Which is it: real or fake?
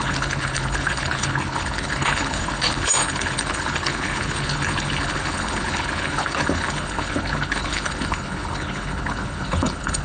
fake